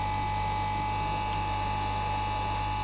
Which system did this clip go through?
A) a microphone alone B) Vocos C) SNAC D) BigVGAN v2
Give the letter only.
A